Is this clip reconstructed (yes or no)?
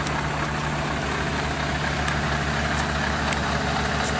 no